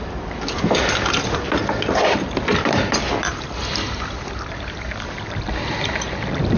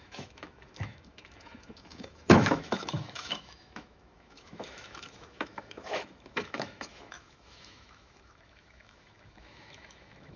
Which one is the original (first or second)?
first